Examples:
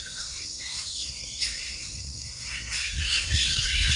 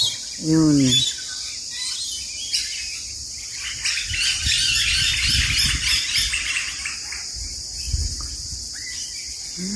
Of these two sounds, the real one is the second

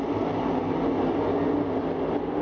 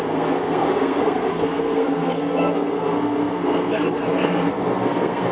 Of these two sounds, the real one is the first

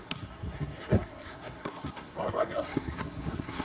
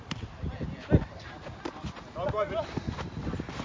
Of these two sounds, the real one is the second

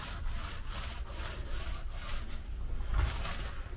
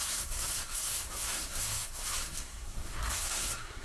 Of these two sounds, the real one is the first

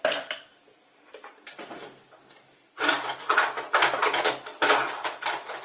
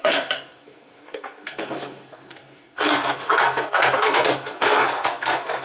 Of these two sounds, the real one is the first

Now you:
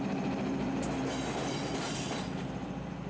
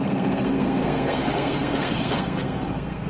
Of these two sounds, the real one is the first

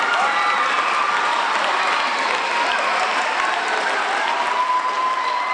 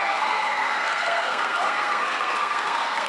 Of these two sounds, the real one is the first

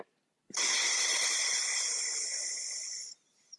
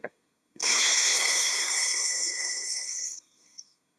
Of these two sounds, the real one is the first